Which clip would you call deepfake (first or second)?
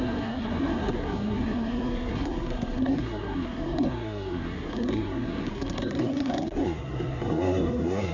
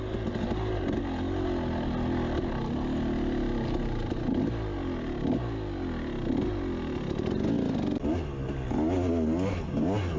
first